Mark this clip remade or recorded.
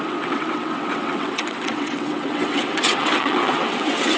remade